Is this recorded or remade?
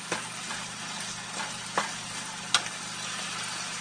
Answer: recorded